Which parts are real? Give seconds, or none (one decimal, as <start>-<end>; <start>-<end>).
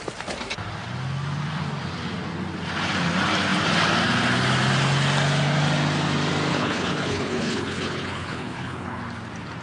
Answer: 0.0-6.5; 9.0-9.6